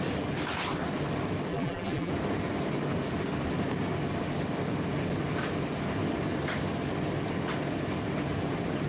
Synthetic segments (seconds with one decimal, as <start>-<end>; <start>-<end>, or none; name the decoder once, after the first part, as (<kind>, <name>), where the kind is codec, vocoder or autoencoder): 1.5-2.1 (vocoder, BigVGAN v2)